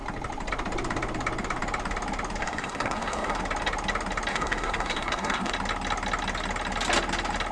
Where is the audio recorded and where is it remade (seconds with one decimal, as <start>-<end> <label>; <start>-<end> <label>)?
0.0-2.4 recorded; 2.4-3.4 remade; 3.4-4.3 recorded; 4.3-5.5 remade; 5.5-7.5 recorded